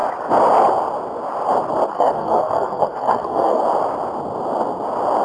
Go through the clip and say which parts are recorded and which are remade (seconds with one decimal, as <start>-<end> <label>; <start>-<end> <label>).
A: 0.0-1.9 recorded; 1.9-3.6 remade; 3.6-5.2 recorded